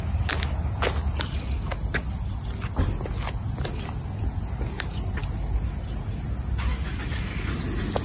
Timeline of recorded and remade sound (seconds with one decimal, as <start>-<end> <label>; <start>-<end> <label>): 0.0-8.0 recorded